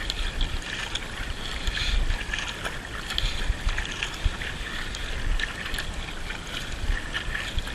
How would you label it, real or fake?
real